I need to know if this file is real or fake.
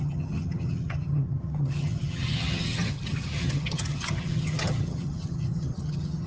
fake